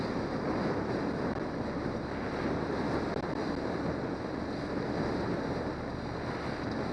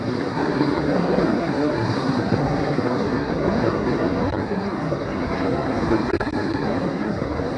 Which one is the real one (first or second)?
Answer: first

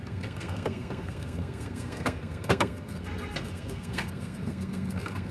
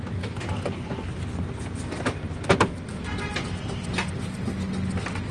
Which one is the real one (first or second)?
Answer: second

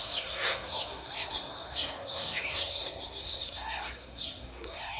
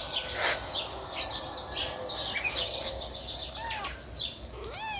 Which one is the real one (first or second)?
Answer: second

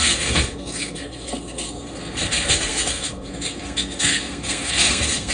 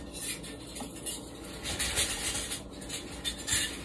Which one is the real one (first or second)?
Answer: second